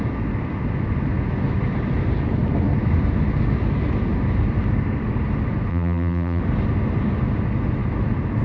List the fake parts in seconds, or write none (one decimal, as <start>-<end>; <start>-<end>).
5.7-6.4